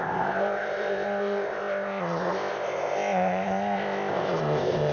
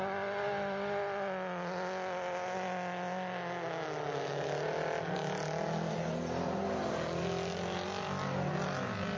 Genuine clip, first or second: second